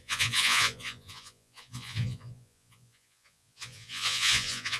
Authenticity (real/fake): fake